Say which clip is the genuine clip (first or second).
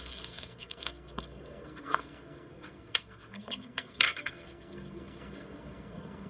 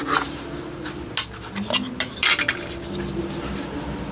second